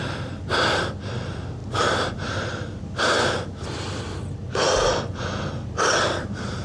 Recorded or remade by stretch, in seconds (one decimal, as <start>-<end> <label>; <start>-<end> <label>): 0.0-6.6 recorded